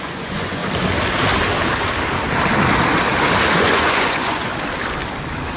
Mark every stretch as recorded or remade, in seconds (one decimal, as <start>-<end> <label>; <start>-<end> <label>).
0.0-0.6 remade; 0.6-3.5 recorded; 3.5-4.5 remade; 4.5-5.6 recorded